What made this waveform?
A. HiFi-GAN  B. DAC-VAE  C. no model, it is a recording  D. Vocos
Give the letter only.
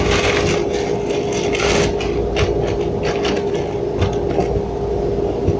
C